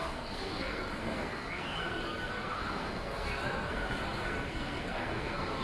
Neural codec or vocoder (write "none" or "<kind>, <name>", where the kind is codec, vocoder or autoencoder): codec, SNAC